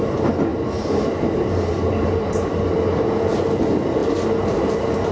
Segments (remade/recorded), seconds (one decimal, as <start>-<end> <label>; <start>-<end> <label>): 0.0-5.1 recorded